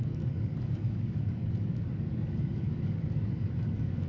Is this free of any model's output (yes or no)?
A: no